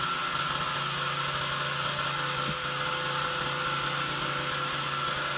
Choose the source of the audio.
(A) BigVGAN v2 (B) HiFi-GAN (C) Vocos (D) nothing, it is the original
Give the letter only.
D